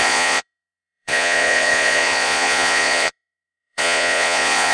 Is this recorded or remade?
remade